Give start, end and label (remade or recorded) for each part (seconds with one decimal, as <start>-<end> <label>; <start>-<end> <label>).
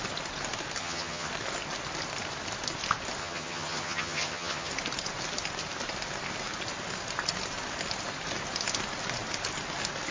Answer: 0.0-0.8 recorded; 0.8-1.3 remade; 1.3-3.2 recorded; 3.2-4.7 remade; 4.7-10.1 recorded